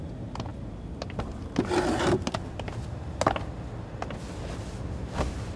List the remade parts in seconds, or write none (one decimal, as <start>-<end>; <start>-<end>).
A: none